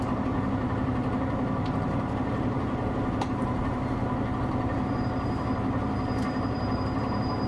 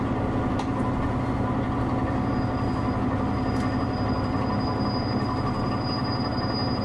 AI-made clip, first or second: first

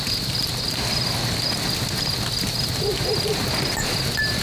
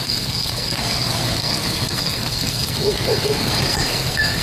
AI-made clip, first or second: second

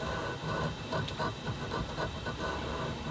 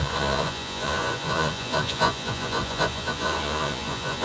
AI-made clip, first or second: second